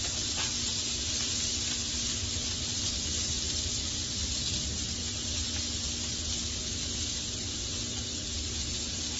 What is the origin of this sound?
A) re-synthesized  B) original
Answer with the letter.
B